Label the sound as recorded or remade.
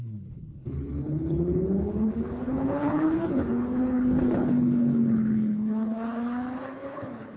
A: remade